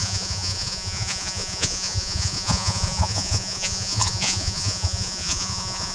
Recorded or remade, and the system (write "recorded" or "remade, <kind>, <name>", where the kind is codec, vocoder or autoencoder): remade, vocoder, Vocos